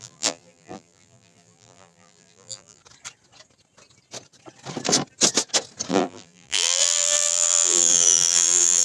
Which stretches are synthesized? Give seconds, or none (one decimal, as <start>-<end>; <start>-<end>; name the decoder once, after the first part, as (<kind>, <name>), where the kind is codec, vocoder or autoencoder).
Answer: 0.0-2.8 (vocoder, BigVGAN v2); 5.9-8.8